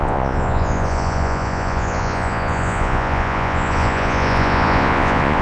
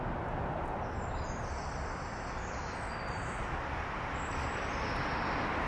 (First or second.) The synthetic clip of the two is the first